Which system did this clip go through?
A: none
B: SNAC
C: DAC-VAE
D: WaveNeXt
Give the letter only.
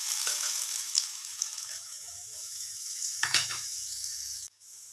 C